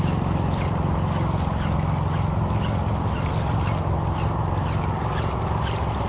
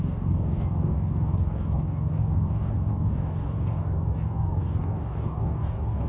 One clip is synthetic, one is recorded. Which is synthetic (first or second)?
second